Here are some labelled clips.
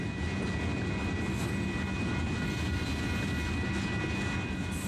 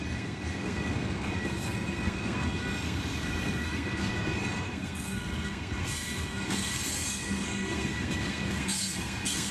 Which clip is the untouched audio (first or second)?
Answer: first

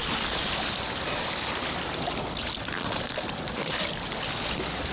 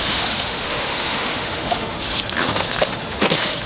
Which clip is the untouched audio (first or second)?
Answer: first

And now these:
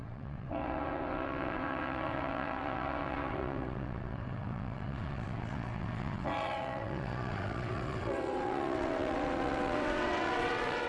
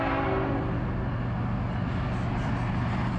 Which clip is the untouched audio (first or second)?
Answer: second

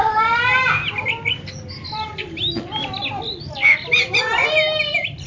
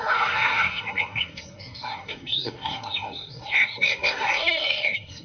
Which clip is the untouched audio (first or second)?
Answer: first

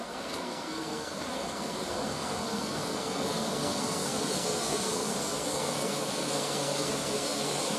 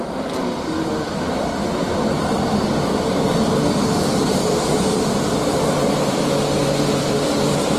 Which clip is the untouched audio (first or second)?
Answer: second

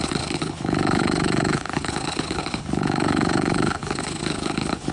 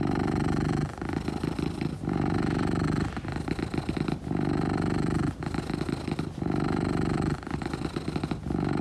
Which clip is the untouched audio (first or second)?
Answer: second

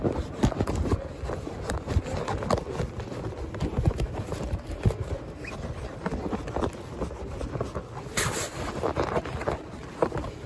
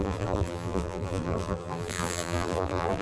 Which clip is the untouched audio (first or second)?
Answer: first